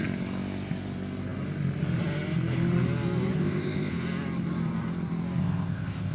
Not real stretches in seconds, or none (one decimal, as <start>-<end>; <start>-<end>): 3.4-3.9; 5.4-6.1